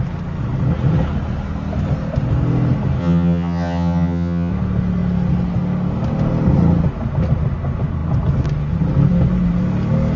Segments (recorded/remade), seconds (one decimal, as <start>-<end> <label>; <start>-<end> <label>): 0.0-3.0 recorded; 3.0-4.5 remade; 4.5-10.2 recorded